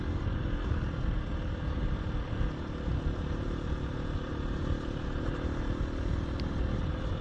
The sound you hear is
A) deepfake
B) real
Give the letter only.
B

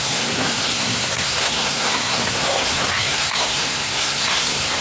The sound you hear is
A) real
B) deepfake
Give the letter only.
B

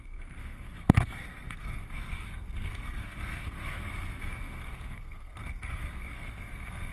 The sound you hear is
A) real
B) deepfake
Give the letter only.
B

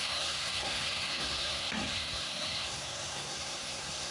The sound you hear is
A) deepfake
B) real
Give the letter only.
A